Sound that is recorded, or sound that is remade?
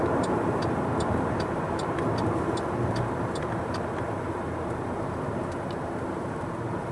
remade